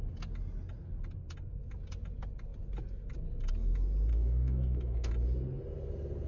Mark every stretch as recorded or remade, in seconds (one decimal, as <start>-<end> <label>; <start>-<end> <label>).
0.0-4.1 recorded; 4.1-5.1 remade; 5.1-6.3 recorded